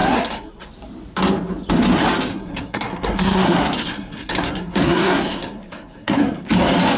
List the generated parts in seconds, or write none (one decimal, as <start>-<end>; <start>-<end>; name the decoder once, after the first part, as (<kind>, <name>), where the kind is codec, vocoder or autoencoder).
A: 0.0-0.7 (codec, SNAC); 2.3-6.4